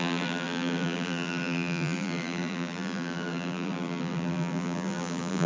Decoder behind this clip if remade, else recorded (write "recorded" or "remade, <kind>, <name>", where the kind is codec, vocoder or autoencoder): remade, vocoder, BigVGAN v2